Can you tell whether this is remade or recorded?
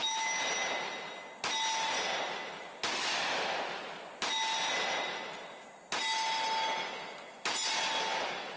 recorded